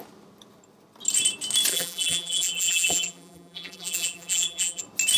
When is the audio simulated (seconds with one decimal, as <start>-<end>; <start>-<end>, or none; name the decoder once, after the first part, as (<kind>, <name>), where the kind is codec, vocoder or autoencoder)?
1.7-4.8 (vocoder, BigVGAN v2)